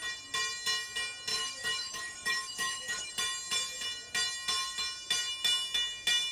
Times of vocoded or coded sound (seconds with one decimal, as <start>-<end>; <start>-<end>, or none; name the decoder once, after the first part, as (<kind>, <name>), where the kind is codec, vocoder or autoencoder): 1.3-3.1 (autoencoder, DAC-VAE)